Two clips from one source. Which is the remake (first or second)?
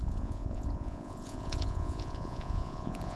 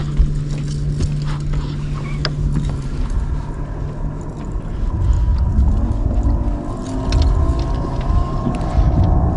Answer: first